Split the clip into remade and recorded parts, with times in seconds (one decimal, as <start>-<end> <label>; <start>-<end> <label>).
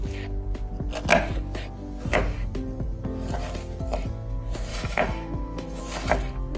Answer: 0.0-4.7 recorded; 4.7-5.8 remade; 5.8-6.6 recorded